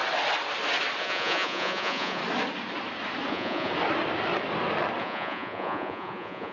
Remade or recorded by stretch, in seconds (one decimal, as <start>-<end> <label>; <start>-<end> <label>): 0.0-1.0 recorded; 1.0-2.2 remade; 2.2-3.3 recorded; 3.3-3.7 remade; 3.7-5.0 recorded; 5.0-6.5 remade